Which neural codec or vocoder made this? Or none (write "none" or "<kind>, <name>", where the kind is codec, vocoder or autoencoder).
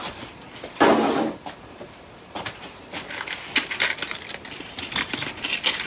none